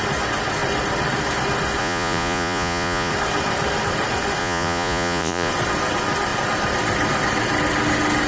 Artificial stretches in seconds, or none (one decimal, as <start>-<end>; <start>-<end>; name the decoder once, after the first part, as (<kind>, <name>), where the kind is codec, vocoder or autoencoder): 1.8-3.1 (vocoder, Vocos); 4.4-5.5